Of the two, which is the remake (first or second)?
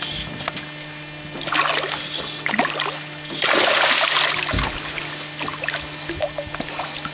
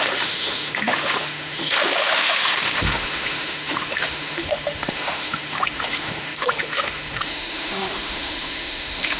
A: second